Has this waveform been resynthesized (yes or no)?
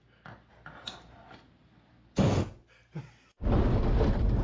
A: no